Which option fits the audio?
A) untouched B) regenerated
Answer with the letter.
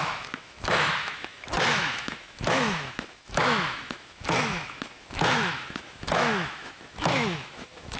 B